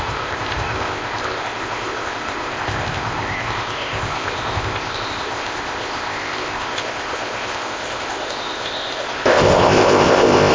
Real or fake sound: fake